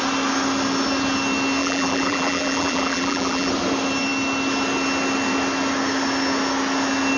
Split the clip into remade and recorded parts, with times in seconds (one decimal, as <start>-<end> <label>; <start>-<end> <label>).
0.0-1.6 recorded; 1.6-3.5 remade; 3.5-7.2 recorded